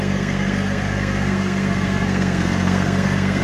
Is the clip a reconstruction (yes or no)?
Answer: yes